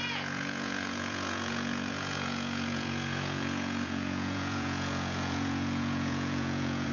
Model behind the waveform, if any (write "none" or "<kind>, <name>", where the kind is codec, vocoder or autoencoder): vocoder, Vocos